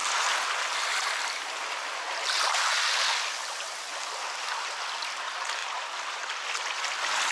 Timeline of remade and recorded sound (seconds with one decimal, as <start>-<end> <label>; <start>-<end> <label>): 0.0-7.3 recorded